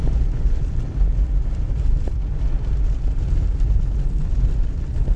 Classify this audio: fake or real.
fake